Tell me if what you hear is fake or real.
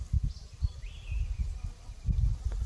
real